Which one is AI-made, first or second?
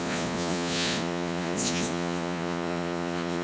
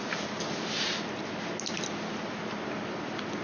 first